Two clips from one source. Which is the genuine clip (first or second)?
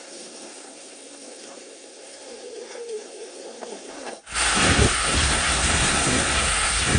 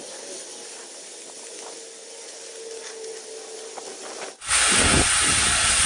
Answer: second